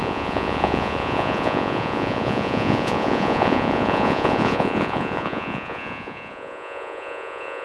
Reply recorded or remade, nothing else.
remade